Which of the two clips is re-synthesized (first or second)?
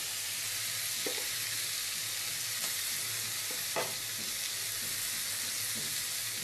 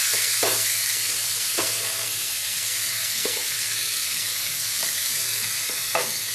second